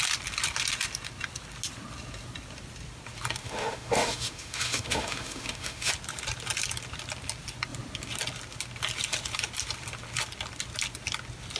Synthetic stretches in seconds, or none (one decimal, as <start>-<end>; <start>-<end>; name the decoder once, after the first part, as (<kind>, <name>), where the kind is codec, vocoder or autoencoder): 3.4-5.9 (autoencoder, DAC-VAE)